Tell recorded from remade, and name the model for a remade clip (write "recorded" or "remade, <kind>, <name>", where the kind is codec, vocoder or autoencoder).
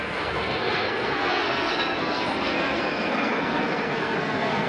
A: remade, codec, SNAC